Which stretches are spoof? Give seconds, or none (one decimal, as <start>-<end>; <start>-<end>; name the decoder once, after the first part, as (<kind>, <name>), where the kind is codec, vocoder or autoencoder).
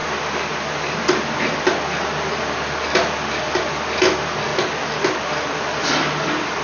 none